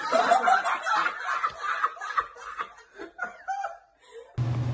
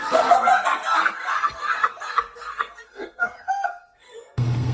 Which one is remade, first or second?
second